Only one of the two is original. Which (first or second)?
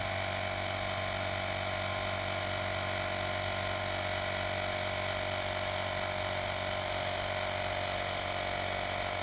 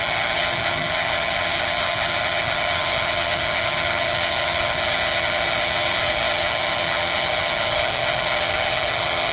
first